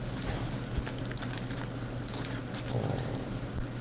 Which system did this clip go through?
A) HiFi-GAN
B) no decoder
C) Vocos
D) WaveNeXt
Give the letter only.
B